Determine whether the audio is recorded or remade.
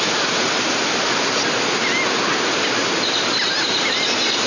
recorded